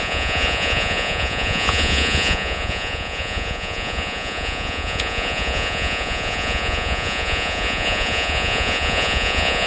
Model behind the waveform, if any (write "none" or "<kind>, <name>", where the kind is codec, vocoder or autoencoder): vocoder, Vocos